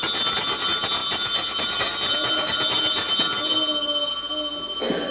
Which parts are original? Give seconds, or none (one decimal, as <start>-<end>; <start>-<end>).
0.0-5.1